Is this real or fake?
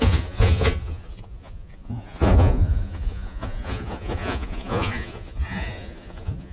fake